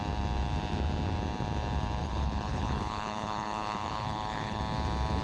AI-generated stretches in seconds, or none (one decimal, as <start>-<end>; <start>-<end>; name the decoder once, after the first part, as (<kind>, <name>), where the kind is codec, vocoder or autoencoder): 2.0-4.6 (codec, HILCodec)